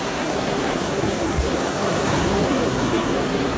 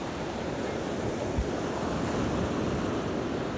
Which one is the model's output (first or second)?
first